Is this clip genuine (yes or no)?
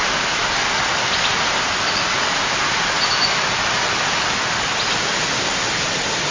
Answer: yes